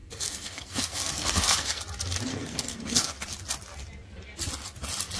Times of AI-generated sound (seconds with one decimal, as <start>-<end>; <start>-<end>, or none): 0.0-1.8; 2.3-3.1

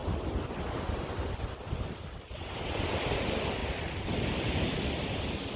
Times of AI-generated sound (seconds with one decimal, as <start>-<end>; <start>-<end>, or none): 0.0-1.3